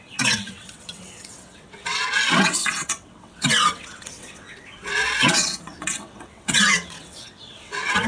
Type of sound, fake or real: fake